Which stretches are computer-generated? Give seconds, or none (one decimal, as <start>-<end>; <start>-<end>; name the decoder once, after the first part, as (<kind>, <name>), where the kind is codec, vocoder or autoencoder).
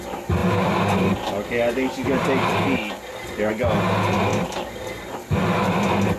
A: 0.4-3.5 (vocoder, BigVGAN v2); 4.3-5.1